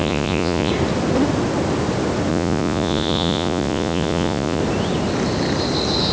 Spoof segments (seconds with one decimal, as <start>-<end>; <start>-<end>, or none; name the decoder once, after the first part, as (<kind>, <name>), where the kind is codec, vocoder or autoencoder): 0.0-0.7 (vocoder, Vocos); 2.3-4.6